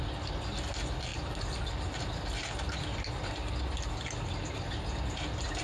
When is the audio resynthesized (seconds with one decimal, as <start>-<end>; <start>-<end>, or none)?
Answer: none